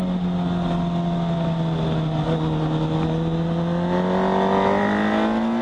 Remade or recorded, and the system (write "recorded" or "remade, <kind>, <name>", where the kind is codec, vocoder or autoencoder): recorded